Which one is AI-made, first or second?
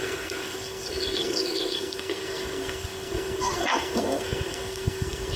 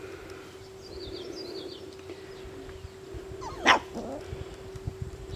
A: first